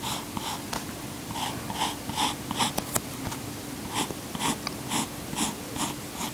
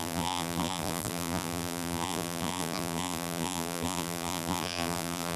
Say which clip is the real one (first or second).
first